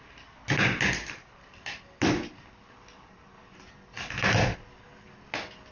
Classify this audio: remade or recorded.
recorded